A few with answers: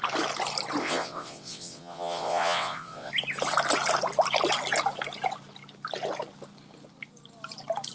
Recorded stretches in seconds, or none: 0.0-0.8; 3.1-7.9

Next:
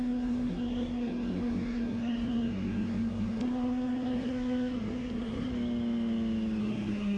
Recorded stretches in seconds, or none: 5.5-6.6

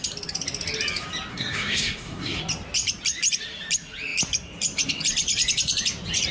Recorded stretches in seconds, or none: 0.0-1.3; 2.4-6.3